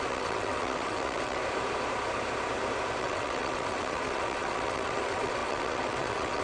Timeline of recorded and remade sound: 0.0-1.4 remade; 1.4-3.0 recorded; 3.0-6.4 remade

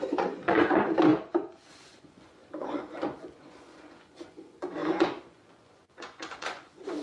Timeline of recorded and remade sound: 0.0-7.0 remade